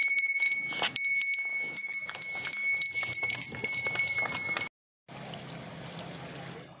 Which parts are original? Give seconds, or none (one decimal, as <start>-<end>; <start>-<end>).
0.0-1.5; 2.8-6.8